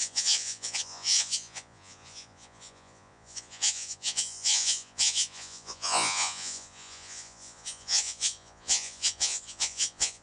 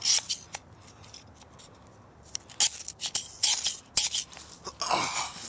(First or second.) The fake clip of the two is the first